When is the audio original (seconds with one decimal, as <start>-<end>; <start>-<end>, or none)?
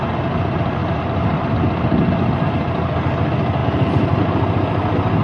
0.0-0.8; 1.5-3.6; 4.2-5.2